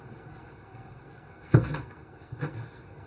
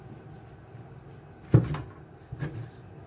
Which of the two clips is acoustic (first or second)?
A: second